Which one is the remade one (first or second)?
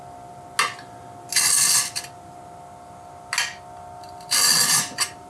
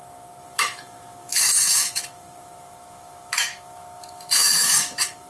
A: second